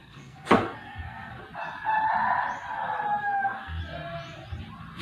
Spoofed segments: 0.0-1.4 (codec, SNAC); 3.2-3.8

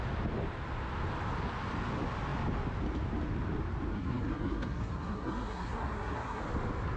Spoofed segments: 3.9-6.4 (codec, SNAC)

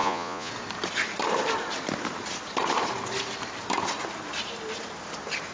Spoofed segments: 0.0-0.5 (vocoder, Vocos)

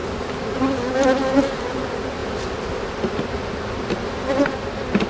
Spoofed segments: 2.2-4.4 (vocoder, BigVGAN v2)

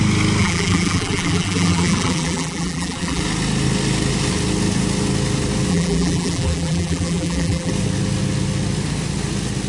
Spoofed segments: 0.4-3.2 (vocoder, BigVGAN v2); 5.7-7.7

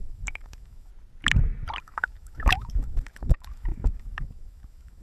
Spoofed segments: 0.0-0.9 (autoencoder, DAC-VAE); 1.8-5.0

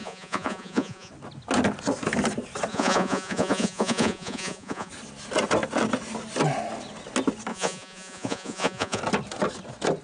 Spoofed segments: 0.0-1.1 (vocoder, Vocos); 2.7-4.9; 7.5-9.0

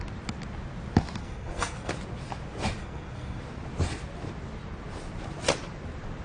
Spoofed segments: 1.2-1.9 (codec, SNAC); 2.8-3.4